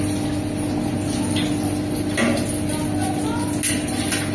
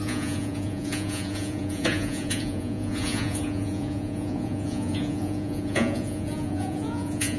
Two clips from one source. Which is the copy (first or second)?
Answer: second